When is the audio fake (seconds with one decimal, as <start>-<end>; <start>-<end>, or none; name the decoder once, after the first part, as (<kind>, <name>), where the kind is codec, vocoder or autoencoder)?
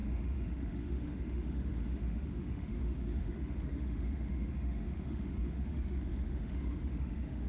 0.0-7.5 (autoencoder, DAC-VAE)